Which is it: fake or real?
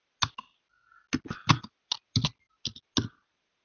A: real